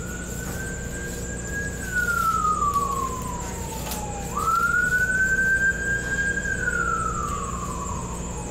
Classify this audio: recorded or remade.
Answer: recorded